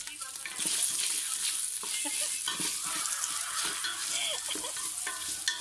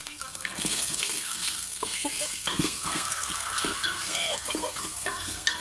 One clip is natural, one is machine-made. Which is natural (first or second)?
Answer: first